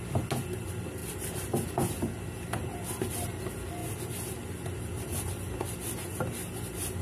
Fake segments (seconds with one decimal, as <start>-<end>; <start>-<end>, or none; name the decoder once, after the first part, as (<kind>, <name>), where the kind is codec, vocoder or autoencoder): none